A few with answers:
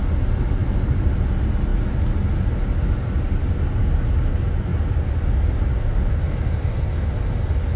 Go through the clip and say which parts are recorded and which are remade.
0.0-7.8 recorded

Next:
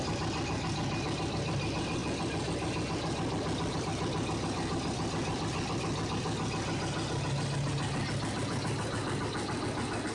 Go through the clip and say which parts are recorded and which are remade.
0.0-10.1 recorded

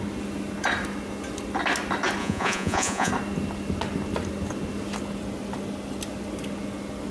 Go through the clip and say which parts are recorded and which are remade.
0.0-2.2 recorded; 2.2-3.1 remade; 3.1-7.1 recorded

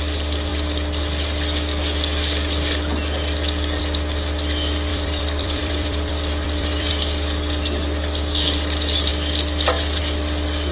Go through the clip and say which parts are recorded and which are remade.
0.0-4.9 recorded; 4.9-6.9 remade; 6.9-10.7 recorded

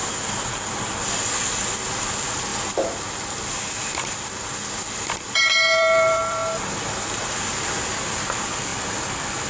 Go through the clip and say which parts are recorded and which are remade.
0.0-0.7 recorded; 0.7-2.5 remade; 2.5-5.4 recorded; 5.4-6.4 remade; 6.4-7.7 recorded; 7.7-9.5 remade

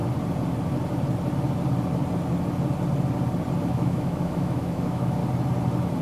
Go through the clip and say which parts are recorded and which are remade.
0.0-3.6 recorded; 3.6-5.2 remade; 5.2-6.0 recorded

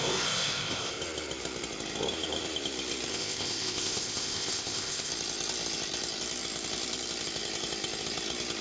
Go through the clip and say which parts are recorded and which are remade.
0.0-1.0 remade; 1.0-3.1 recorded; 3.1-5.1 remade; 5.1-8.6 recorded